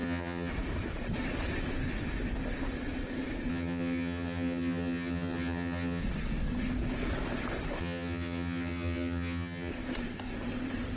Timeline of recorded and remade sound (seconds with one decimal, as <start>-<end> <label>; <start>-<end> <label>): 0.0-0.5 remade; 0.5-3.5 recorded; 3.5-6.0 remade; 6.0-7.8 recorded; 7.8-9.7 remade; 9.7-11.0 recorded